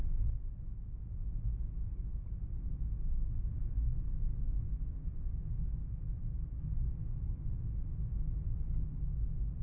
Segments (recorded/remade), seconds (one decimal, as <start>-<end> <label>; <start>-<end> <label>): 0.0-9.6 recorded